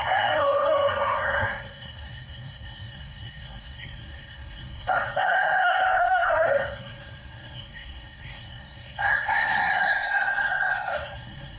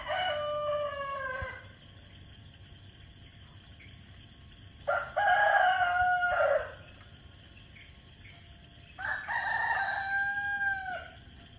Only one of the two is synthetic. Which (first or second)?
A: first